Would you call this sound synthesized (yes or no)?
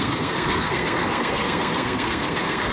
yes